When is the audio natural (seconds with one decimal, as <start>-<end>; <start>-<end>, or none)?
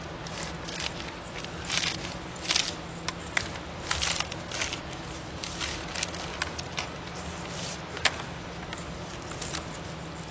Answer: 0.0-10.3